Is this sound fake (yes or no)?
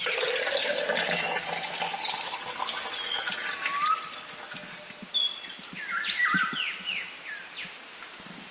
no